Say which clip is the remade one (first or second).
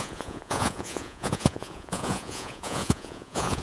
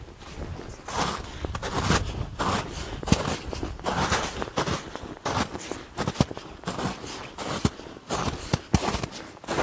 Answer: first